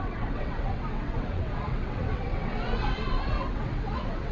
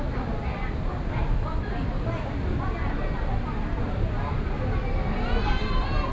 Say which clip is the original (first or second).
second